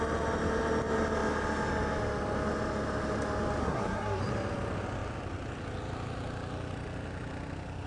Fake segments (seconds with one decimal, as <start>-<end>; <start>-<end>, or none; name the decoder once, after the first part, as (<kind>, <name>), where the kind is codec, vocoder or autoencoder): 3.6-4.2 (codec, SNAC)